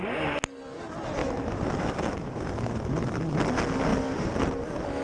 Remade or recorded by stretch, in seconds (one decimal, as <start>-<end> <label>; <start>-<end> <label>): 0.0-1.2 recorded; 1.2-3.2 remade; 3.2-5.0 recorded